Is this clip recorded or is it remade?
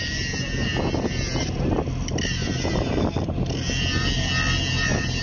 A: recorded